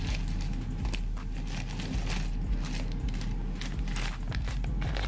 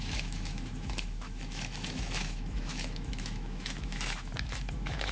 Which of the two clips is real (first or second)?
first